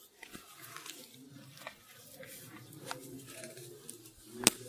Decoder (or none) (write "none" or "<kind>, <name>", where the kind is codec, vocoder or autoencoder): none